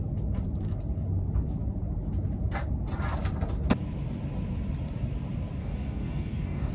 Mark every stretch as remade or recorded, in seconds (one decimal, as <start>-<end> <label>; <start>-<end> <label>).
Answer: 0.0-5.6 recorded; 5.6-6.7 remade